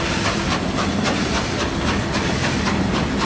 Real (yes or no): yes